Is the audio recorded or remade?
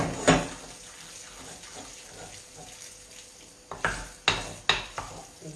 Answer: recorded